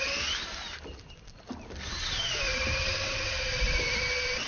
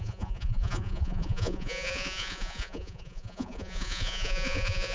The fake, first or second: second